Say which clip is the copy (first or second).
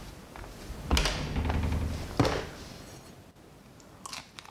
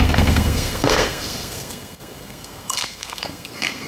second